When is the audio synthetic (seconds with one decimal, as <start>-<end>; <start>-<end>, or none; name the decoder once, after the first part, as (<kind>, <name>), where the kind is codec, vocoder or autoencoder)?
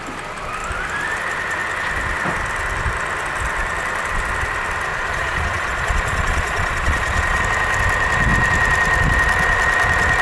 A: 4.9-7.4 (vocoder, Vocos)